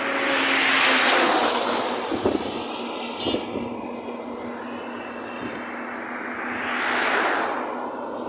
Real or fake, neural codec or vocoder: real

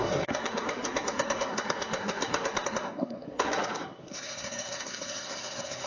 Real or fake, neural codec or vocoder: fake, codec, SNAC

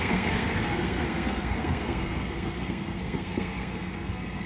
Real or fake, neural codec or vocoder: fake, codec, SNAC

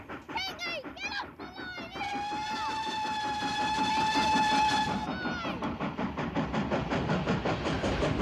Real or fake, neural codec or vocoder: real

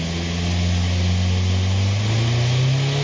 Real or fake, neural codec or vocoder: real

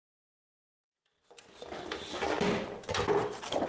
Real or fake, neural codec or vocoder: real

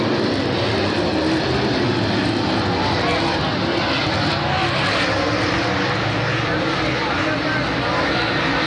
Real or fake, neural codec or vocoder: real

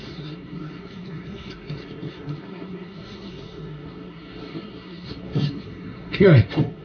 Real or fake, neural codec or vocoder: fake, codec, SNAC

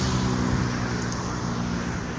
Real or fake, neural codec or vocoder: real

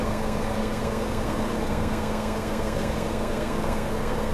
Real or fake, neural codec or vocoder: fake, codec, SNAC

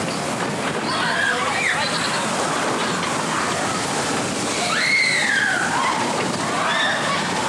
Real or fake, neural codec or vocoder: real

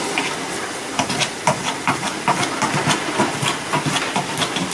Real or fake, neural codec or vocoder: real